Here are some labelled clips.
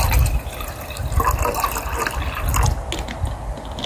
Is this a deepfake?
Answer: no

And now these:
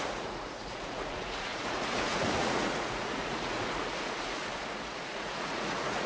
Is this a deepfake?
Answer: yes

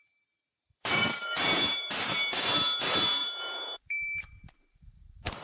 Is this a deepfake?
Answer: yes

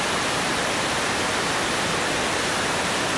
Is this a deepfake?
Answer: no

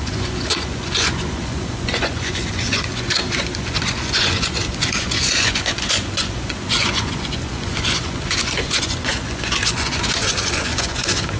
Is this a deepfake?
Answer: yes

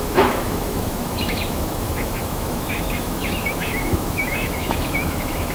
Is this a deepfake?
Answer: yes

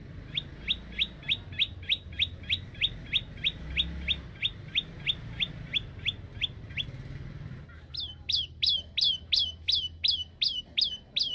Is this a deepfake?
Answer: no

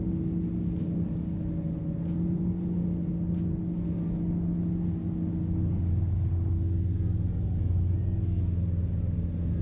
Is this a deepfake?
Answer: no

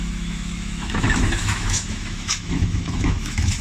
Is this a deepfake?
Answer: yes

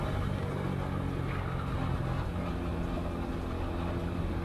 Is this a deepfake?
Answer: no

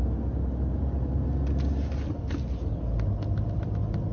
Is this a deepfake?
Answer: no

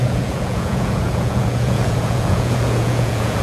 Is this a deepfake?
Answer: yes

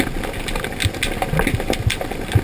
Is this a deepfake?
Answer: no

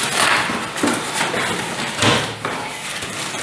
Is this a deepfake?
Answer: no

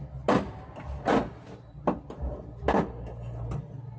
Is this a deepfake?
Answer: no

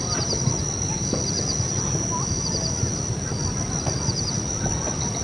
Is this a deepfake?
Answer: no